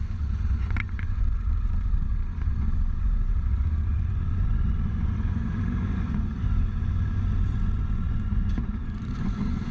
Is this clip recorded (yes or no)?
no